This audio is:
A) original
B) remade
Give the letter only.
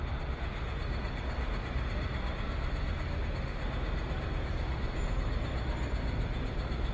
A